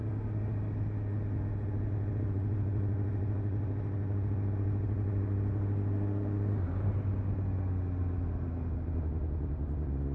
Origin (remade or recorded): recorded